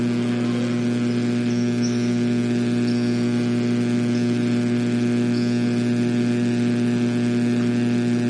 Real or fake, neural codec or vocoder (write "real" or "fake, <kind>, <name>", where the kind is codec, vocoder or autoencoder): real